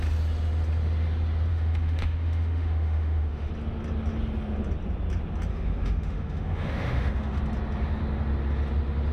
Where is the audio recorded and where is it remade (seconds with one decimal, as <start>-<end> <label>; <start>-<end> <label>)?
0.0-1.5 recorded; 1.5-3.5 remade; 3.5-5.5 recorded; 5.5-7.4 remade; 7.4-9.1 recorded